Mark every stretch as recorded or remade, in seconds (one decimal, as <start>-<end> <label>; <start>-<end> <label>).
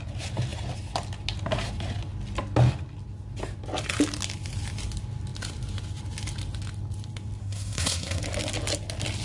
0.0-7.4 recorded; 7.4-8.2 remade; 8.2-9.2 recorded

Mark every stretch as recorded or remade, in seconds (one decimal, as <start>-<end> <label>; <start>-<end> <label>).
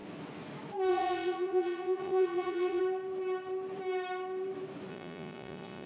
0.0-0.9 recorded; 0.9-2.8 remade; 2.8-4.9 recorded; 4.9-5.9 remade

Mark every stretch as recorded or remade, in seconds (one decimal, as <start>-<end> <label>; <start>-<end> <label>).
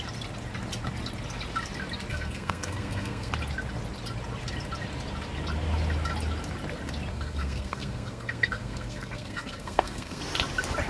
0.0-2.1 recorded; 2.1-3.3 remade; 3.3-7.1 recorded; 7.1-10.2 remade; 10.2-10.9 recorded